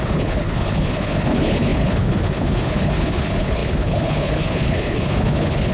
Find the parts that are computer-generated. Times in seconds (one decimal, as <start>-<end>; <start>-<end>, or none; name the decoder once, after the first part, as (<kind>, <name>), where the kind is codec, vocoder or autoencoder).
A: 0.0-5.7 (codec, HILCodec)